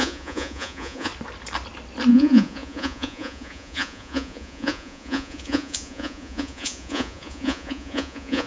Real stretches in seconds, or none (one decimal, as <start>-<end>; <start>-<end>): 1.1-2.1